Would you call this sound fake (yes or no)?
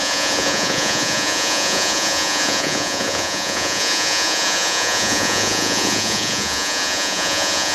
yes